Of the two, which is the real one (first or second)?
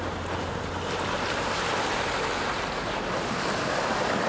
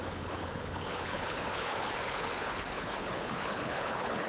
first